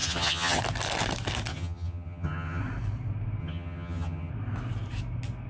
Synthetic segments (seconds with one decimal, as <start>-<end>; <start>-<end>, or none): 0.0-0.6; 1.5-2.6; 3.4-4.3